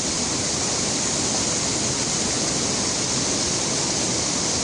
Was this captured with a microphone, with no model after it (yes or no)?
yes